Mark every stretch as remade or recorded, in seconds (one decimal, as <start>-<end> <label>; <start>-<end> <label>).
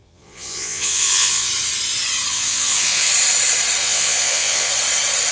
0.0-1.5 remade; 1.5-2.3 recorded; 2.3-3.1 remade; 3.1-3.8 recorded; 3.8-4.7 remade; 4.7-5.3 recorded